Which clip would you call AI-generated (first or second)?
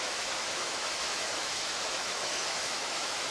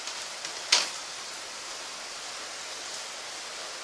first